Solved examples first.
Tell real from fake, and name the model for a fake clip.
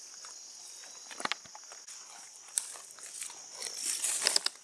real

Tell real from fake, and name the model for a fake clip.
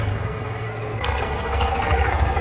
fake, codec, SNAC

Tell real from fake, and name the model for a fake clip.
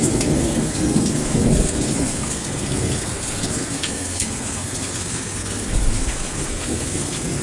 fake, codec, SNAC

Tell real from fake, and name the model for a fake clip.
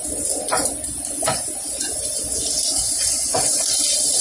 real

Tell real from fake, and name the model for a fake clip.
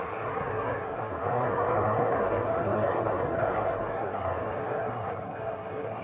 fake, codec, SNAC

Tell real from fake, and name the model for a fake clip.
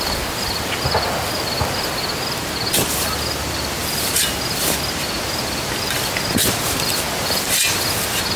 real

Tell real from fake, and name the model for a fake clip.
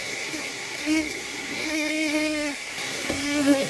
fake, codec, SNAC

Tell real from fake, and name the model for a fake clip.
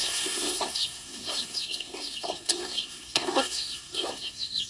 fake, codec, SNAC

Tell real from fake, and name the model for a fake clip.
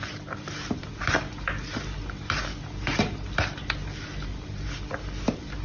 real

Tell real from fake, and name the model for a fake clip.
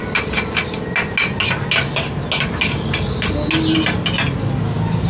real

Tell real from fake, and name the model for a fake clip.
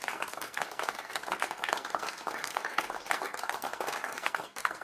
fake, codec, SNAC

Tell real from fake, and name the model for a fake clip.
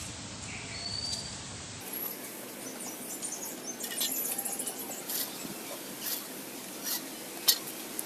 real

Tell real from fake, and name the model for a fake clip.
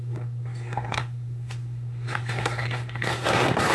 fake, codec, SNAC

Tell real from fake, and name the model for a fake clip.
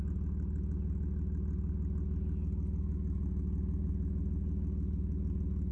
real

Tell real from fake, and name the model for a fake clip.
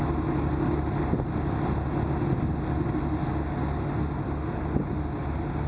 real